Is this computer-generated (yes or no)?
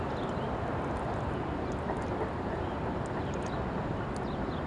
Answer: no